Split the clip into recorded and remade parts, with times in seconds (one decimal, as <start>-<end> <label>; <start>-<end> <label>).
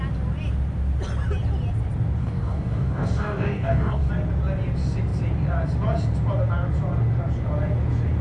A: 0.0-2.2 recorded; 2.2-4.1 remade; 4.1-8.2 recorded